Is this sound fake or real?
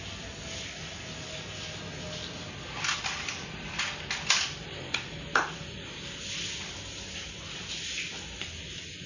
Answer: real